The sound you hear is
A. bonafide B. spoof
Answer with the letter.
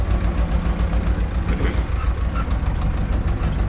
A